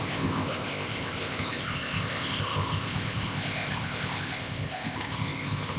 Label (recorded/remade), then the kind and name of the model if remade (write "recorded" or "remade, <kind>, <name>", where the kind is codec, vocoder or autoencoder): remade, codec, ZipCodec